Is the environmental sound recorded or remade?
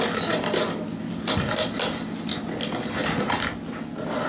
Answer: recorded